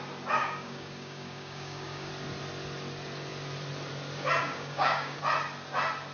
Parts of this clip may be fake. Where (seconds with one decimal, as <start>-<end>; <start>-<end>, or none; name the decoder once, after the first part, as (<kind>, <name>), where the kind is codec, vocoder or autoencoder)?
0.4-2.1 (codec, DAC); 4.4-5.2